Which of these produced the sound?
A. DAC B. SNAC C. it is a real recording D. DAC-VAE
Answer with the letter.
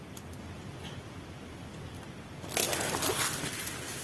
C